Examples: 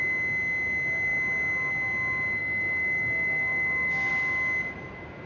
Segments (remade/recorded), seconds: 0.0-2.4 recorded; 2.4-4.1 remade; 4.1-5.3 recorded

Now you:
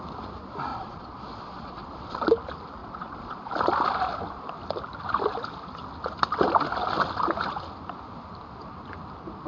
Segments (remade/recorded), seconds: 0.0-0.7 recorded; 0.7-2.2 remade; 2.2-2.8 recorded; 2.8-3.5 remade; 3.5-9.5 recorded